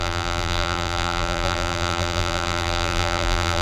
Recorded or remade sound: remade